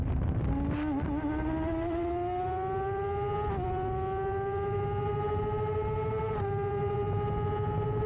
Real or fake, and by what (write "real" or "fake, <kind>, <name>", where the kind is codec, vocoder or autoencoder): real